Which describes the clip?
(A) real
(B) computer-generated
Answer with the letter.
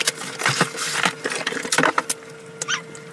A